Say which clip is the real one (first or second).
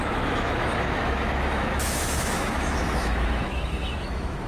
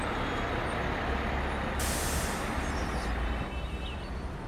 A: second